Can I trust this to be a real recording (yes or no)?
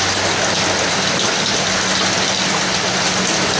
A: yes